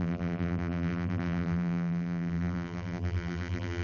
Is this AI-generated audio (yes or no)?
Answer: yes